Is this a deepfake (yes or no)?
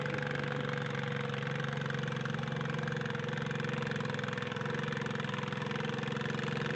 no